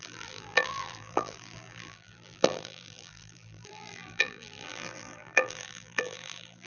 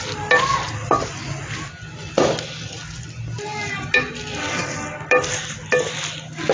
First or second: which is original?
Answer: second